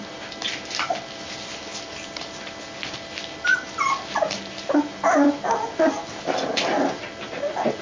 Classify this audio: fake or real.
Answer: real